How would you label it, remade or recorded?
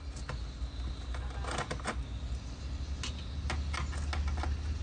recorded